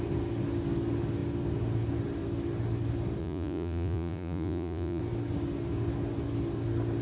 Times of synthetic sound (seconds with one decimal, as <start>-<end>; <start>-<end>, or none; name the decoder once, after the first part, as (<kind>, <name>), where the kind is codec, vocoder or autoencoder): 3.2-5.0 (vocoder, Vocos)